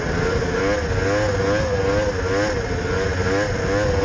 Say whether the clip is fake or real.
real